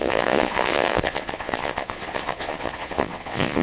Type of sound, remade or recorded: remade